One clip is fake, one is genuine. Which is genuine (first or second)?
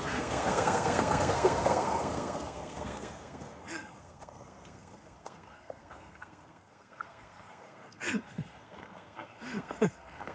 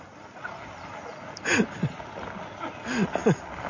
second